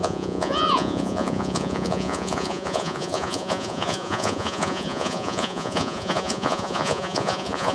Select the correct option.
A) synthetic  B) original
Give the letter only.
A